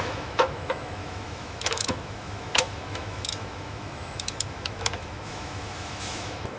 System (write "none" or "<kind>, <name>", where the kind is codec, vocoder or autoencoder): autoencoder, DAC-VAE